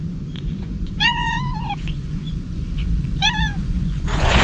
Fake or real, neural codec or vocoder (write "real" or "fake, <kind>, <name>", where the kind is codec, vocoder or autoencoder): fake, vocoder, Vocos